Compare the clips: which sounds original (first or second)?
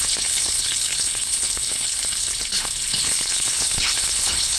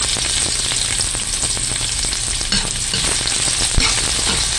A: second